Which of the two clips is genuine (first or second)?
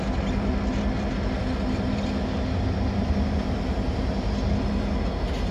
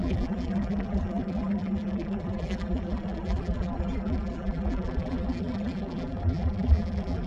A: first